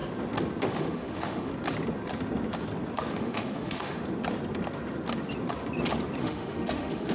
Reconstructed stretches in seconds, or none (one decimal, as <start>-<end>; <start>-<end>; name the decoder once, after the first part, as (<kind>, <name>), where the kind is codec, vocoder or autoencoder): 0.6-1.5 (autoencoder, DAC-VAE); 3.1-4.0; 6.2-7.1